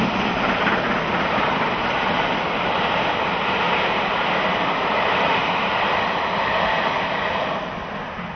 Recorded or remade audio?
recorded